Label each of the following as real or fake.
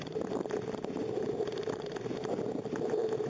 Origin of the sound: real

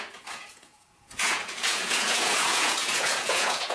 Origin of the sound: fake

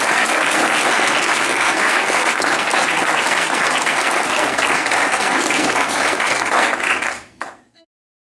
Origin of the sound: fake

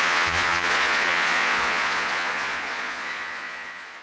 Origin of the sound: fake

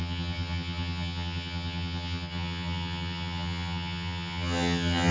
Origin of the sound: fake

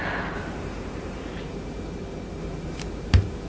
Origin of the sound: fake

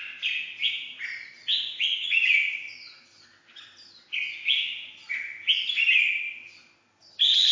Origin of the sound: real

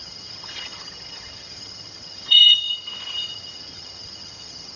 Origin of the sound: fake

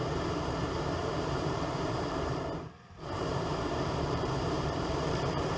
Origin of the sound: fake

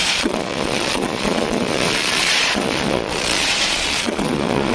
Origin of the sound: fake